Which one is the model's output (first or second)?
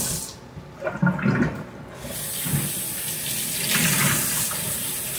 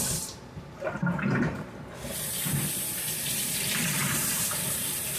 second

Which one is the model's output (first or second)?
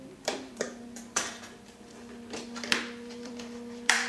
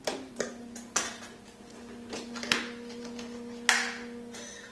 first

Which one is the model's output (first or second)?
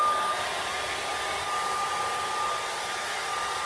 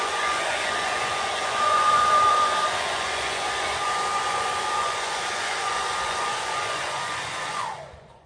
second